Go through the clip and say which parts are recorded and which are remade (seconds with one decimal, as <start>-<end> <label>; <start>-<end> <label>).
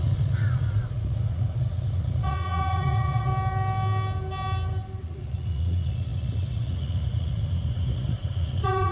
0.0-3.3 remade; 3.3-5.0 recorded; 5.0-8.9 remade